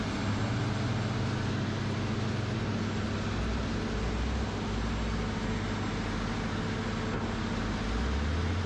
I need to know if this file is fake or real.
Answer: real